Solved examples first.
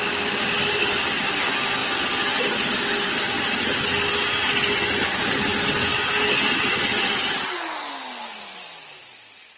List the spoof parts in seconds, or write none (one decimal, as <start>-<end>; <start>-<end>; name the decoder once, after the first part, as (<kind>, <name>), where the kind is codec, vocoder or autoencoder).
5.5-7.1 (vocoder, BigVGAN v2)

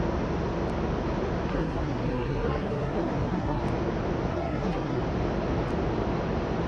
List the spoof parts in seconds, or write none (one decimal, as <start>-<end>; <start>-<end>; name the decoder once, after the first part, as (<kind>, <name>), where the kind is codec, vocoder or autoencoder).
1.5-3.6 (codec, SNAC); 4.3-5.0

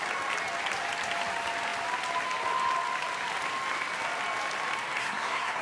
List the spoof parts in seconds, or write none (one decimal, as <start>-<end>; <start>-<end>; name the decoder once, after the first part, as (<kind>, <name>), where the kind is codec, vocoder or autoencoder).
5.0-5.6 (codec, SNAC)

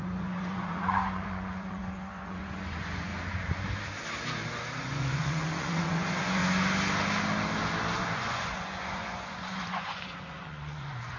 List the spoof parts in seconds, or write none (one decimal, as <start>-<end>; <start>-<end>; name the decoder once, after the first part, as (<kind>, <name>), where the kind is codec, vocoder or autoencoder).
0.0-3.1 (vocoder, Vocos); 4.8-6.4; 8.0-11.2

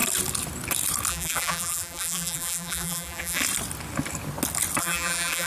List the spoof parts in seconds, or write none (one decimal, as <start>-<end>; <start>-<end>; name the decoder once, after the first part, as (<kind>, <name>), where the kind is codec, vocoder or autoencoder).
1.1-3.4 (vocoder, BigVGAN v2); 4.8-5.5

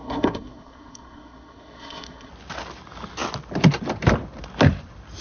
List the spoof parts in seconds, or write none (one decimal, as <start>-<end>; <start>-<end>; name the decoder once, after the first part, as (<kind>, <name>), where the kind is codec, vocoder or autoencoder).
0.0-2.3 (codec, SNAC)

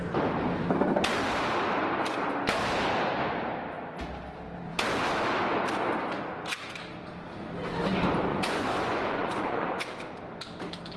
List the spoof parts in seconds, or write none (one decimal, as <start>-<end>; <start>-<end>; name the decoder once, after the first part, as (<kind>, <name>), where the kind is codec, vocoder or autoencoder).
8.3-9.8 (vocoder, Vocos)